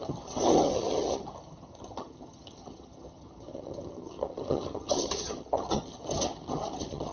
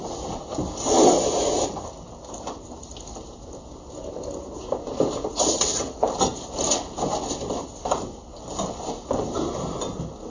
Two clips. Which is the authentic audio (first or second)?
second